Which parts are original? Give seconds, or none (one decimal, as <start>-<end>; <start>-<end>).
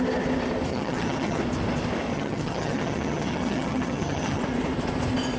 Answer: 0.0-0.7; 1.4-2.1; 4.4-5.4